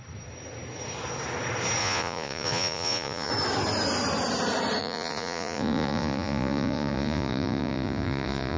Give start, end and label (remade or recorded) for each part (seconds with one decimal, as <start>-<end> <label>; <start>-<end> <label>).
0.0-1.8 recorded; 1.8-3.3 remade; 3.3-4.8 recorded; 4.8-8.6 remade